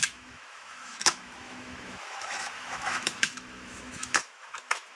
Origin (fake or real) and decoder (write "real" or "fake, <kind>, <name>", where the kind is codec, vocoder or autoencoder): fake, autoencoder, DAC-VAE